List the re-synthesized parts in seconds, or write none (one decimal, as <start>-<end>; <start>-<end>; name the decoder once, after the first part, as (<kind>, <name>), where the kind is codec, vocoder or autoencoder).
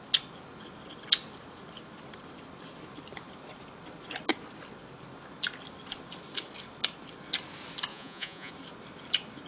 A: 7.9-8.5 (vocoder, Vocos)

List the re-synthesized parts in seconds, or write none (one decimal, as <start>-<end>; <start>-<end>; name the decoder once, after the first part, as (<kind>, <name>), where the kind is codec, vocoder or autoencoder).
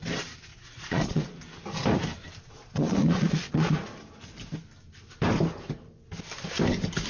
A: 0.5-1.4 (vocoder, Vocos); 2.6-3.8